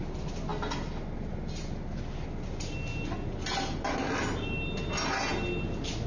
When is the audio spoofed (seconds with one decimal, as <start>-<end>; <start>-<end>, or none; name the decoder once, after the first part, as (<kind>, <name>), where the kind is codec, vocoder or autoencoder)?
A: none